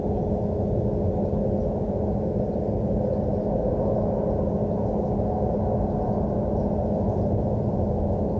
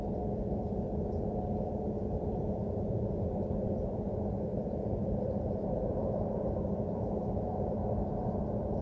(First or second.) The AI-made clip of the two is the second